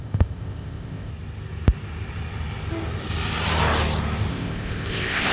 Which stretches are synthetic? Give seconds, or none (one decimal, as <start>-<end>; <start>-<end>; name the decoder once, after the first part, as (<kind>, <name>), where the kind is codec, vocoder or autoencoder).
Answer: 0.0-1.1 (codec, ZipCodec); 4.3-5.3